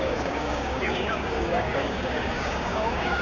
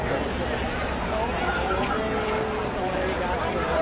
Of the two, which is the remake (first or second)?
first